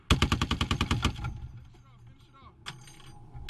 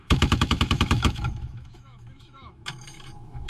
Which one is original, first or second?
first